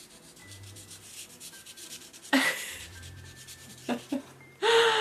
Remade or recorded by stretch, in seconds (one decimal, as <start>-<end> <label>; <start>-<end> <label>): 0.0-0.4 recorded; 0.4-1.1 remade; 1.1-1.6 recorded; 1.6-4.6 remade; 4.6-5.0 recorded